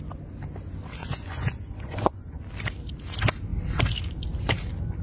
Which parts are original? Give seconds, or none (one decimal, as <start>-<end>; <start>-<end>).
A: 0.0-1.0; 2.4-5.0